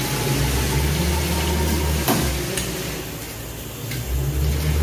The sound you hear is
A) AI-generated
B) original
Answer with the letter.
B